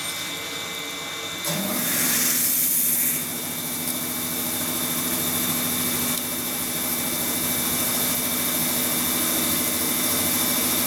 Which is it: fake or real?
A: real